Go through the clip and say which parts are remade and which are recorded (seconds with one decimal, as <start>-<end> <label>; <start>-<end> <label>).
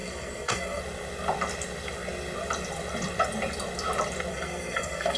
0.0-0.8 remade; 0.8-4.3 recorded; 4.3-5.2 remade